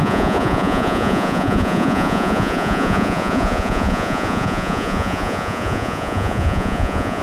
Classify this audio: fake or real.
fake